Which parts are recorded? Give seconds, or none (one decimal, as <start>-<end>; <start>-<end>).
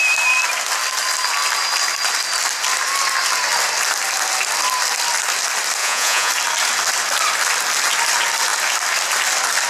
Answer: 0.0-5.8; 6.3-9.7